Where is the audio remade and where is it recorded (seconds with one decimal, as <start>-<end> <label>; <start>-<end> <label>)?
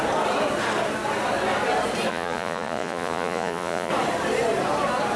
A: 0.0-2.1 recorded; 2.1-3.9 remade; 3.9-5.2 recorded